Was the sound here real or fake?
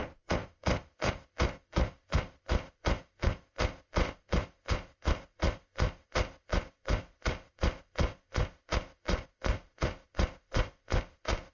fake